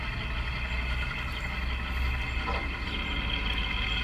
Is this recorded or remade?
recorded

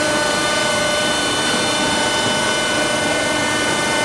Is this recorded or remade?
remade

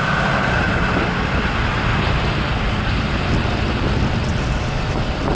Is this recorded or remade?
recorded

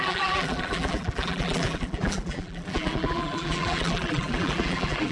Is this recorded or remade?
remade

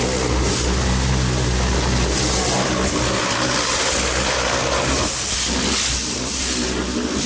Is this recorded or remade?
recorded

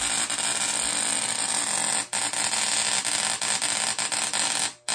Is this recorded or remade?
recorded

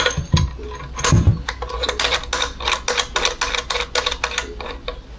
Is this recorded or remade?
recorded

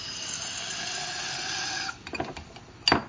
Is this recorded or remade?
recorded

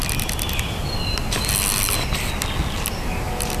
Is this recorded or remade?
recorded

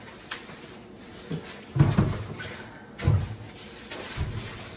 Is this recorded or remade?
recorded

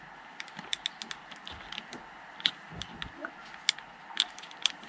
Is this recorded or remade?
recorded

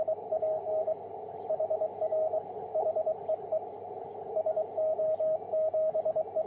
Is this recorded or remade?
recorded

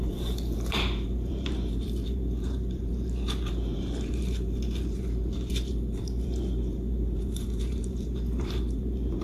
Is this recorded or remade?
remade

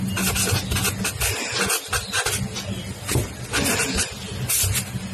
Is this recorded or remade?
recorded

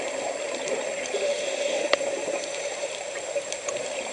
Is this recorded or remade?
remade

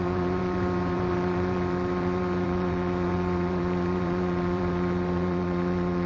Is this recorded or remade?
remade